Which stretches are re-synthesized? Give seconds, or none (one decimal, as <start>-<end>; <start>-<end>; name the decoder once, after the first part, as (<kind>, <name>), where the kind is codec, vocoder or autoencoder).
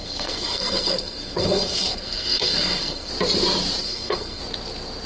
0.0-3.1 (codec, SNAC); 3.8-4.4